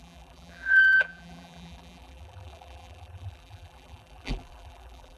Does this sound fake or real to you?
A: fake